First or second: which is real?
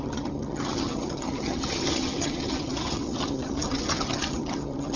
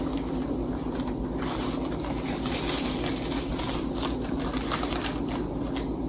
second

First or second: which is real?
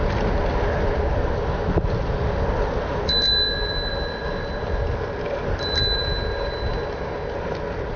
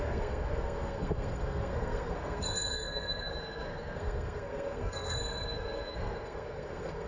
first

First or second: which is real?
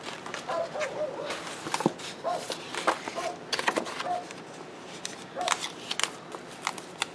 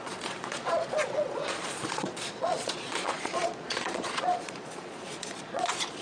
first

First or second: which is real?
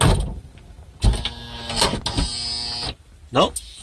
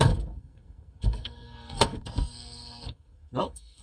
first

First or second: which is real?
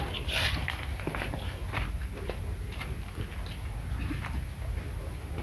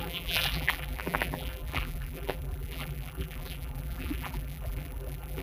first